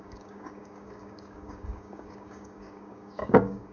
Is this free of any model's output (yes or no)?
no